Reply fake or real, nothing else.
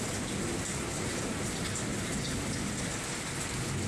real